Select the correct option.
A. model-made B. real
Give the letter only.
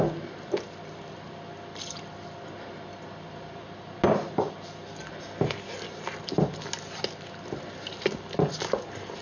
B